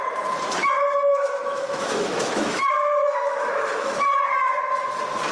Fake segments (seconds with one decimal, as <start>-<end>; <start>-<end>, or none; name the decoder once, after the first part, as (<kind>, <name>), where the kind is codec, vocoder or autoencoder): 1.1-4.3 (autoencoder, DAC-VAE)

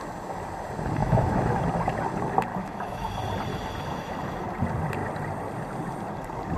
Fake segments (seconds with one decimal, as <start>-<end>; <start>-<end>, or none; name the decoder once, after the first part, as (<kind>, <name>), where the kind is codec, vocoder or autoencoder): 1.0-1.6 (autoencoder, DAC-VAE); 2.5-3.1; 3.5-4.4

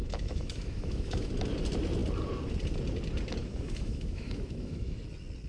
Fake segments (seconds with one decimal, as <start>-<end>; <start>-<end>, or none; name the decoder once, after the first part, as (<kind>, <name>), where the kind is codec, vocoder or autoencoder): 0.0-1.3 (autoencoder, DAC-VAE); 3.4-5.0